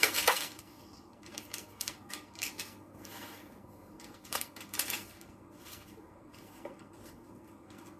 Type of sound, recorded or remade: remade